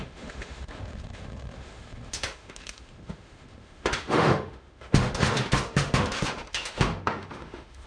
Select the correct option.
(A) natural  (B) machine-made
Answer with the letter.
B